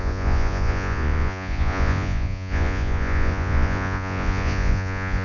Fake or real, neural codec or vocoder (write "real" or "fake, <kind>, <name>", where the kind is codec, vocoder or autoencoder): fake, vocoder, Vocos